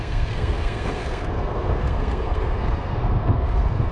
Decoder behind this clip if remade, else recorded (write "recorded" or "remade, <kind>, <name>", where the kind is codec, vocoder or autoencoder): remade, codec, SNAC